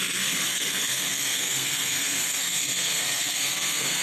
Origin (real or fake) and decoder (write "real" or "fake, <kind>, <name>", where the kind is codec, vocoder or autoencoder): fake, codec, SNAC